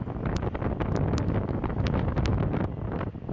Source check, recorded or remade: recorded